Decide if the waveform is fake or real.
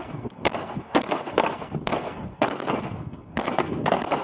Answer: fake